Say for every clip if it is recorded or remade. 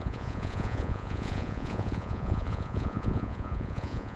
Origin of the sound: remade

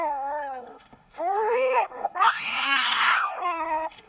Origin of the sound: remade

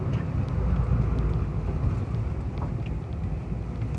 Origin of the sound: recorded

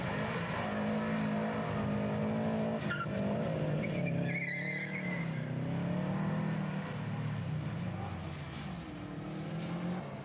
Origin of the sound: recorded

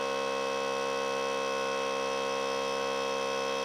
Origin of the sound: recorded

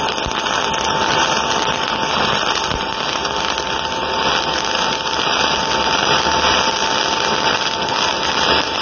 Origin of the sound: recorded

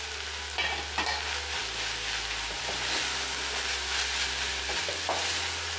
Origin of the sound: recorded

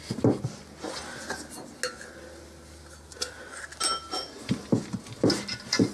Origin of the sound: recorded